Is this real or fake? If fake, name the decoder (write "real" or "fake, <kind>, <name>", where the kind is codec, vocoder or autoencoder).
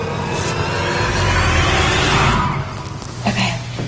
real